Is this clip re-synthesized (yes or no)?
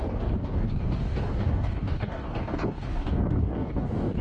yes